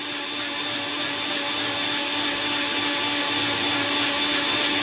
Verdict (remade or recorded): recorded